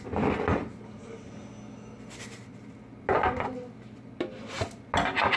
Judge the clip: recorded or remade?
recorded